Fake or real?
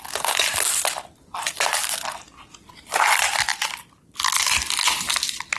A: real